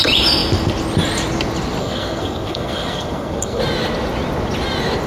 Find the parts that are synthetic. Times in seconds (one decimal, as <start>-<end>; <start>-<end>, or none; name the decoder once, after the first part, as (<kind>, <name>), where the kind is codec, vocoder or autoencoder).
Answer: 1.8-3.6 (codec, SNAC)

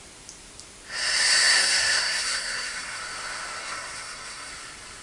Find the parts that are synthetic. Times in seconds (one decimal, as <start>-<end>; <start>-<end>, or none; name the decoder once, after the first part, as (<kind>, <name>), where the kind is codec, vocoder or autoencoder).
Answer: 1.5-3.0 (codec, SNAC); 3.6-4.5

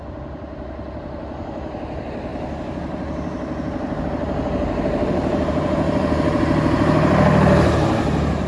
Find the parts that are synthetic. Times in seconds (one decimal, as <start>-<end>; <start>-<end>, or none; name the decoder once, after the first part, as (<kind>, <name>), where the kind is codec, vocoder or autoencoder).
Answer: none

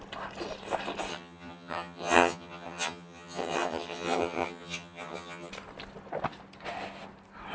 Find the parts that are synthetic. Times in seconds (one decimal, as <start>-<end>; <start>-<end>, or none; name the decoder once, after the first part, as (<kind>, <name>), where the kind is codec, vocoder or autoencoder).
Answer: 1.1-5.5 (vocoder, HiFi-GAN)

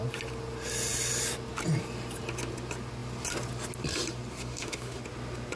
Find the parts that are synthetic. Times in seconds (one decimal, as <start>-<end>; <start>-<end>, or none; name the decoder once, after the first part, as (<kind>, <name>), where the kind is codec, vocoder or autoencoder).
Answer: 4.4-5.0 (autoencoder, DAC-VAE)

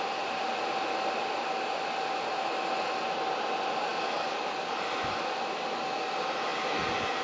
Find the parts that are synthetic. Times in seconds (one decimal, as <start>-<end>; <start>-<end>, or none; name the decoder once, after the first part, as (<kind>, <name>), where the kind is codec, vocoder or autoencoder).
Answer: none

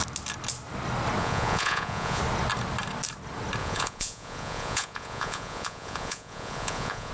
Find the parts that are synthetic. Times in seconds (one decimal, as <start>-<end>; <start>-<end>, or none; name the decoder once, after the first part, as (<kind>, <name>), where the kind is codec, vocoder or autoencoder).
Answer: 1.2-2.2 (vocoder, Vocos); 3.6-7.1

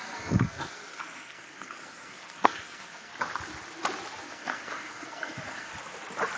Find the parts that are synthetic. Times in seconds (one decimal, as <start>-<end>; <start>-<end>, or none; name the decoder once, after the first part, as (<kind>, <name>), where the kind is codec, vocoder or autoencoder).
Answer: 0.0-3.1 (codec, SNAC); 4.2-5.7